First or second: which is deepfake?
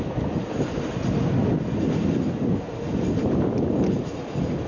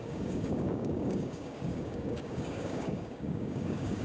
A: second